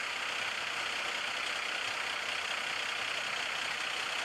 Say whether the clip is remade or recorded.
recorded